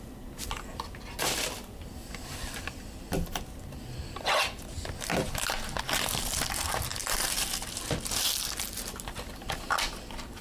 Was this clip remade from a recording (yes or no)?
no